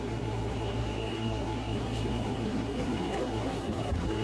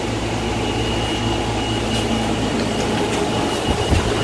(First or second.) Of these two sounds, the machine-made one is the first